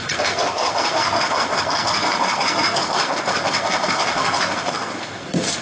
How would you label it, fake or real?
fake